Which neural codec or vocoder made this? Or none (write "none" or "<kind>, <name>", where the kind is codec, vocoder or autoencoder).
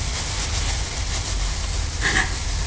none